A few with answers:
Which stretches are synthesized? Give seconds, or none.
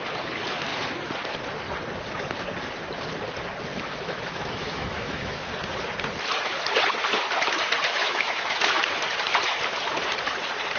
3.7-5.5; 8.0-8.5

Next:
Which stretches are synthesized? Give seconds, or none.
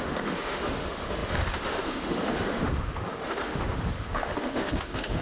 0.0-5.2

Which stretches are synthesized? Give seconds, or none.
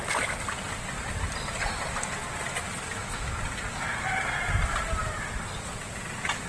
2.6-3.3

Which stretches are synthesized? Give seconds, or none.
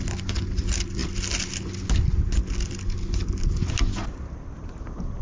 none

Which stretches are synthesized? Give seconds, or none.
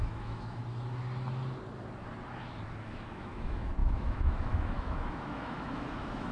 0.0-0.6; 2.8-6.3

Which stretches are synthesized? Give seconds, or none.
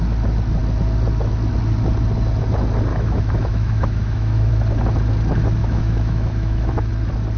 2.9-4.5; 5.6-6.9